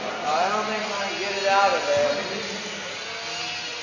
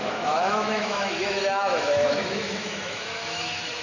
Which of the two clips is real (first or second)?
first